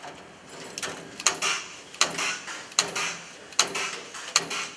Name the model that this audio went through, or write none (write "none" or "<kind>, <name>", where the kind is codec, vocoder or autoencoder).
none